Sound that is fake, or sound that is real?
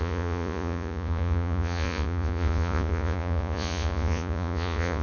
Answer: fake